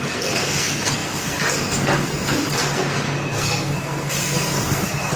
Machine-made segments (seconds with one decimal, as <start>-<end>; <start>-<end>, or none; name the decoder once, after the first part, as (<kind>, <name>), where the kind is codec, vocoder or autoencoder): 0.0-5.2 (codec, SNAC)